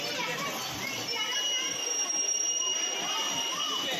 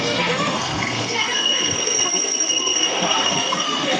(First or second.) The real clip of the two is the first